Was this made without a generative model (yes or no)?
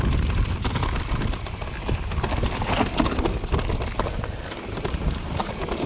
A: yes